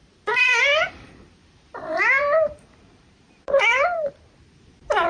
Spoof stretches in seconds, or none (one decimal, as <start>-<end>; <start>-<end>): 1.4-4.2